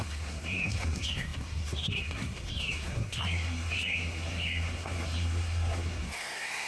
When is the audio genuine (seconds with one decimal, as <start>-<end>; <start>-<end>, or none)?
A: none